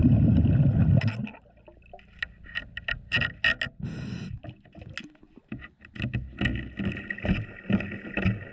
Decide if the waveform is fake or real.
real